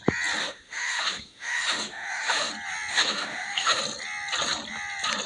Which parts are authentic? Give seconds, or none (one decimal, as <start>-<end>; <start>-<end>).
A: 0.0-0.4; 2.5-2.9; 3.8-5.3

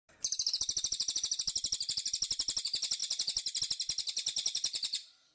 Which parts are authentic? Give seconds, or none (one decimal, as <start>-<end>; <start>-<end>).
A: 0.0-3.0; 3.6-5.3

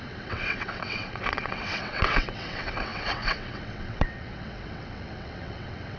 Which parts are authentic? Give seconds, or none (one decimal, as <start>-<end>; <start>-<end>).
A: none